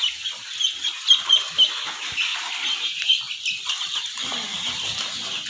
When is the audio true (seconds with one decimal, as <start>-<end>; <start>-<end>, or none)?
0.0-3.3; 4.3-5.5